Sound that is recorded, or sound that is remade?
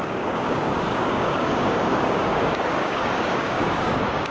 remade